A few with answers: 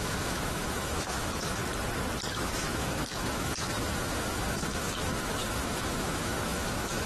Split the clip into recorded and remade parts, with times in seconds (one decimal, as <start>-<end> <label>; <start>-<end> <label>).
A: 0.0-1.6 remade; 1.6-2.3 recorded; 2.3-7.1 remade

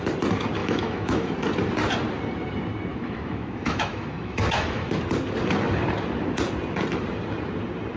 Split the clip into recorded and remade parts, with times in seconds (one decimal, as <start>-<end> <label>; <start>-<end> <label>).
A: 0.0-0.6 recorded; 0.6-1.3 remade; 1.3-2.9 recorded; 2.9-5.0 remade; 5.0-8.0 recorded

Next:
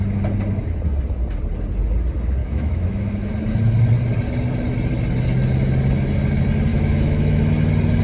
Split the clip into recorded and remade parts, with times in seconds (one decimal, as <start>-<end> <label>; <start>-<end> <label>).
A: 0.0-2.4 recorded; 2.4-3.3 remade; 3.3-6.7 recorded; 6.7-7.4 remade; 7.4-8.0 recorded

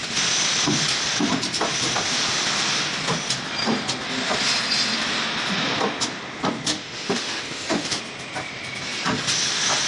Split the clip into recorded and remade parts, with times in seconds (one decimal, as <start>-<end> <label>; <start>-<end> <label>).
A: 0.0-6.7 recorded; 6.7-8.0 remade; 8.0-9.9 recorded